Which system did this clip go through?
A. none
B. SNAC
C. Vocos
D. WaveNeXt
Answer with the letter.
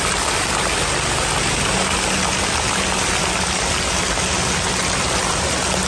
A